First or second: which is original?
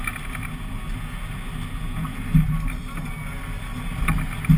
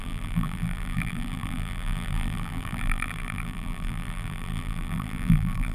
first